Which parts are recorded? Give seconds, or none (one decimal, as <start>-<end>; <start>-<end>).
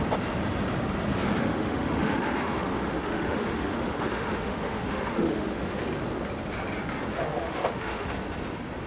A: 0.0-1.4; 5.8-7.1; 8.1-8.9